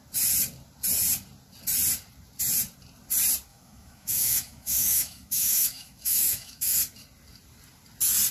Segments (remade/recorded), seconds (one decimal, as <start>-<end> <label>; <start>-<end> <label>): 0.0-3.5 recorded; 3.5-6.8 remade; 6.8-8.3 recorded